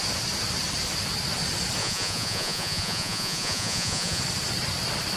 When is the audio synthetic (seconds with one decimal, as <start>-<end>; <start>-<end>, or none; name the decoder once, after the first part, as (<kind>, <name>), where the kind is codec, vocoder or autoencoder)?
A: 1.8-4.2 (vocoder, Vocos)